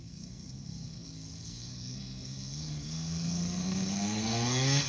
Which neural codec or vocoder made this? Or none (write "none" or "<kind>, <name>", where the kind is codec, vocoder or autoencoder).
codec, SNAC